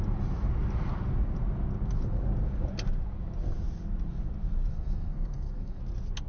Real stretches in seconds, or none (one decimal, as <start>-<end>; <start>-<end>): 0.0-4.7; 5.8-6.3